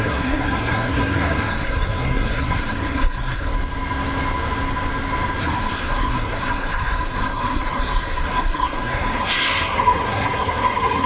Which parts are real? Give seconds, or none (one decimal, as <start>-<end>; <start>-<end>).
3.5-5.4